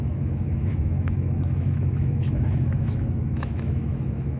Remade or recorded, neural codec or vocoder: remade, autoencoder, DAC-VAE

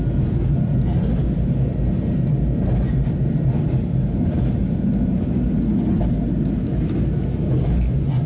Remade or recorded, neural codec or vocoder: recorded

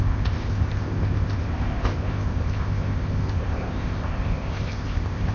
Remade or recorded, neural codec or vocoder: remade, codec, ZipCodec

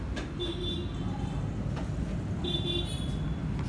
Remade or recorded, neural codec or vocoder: recorded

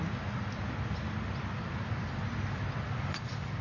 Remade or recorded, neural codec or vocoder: recorded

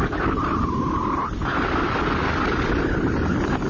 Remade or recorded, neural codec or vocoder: recorded